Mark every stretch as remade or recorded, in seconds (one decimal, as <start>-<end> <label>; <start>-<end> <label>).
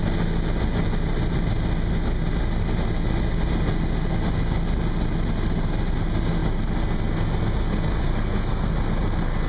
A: 0.0-8.0 recorded; 8.0-8.7 remade; 8.7-9.5 recorded